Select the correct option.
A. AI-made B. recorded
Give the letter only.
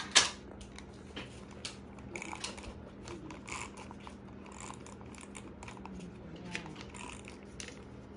B